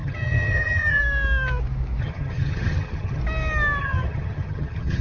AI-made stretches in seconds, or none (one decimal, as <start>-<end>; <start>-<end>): 0.0-1.0; 2.0-3.2; 3.8-5.0